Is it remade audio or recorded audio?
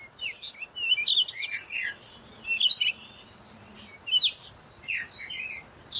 recorded